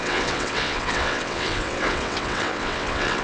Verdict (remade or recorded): remade